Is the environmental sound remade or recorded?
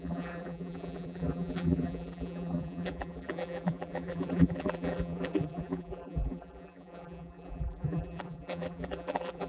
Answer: remade